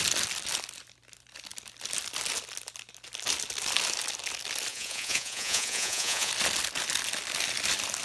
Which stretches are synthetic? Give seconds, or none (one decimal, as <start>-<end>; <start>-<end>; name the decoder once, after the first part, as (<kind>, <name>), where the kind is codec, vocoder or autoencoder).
4.7-6.3 (vocoder, Vocos)